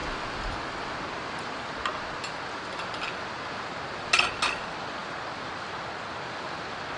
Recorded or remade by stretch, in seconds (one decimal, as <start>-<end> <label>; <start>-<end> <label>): 0.0-7.0 recorded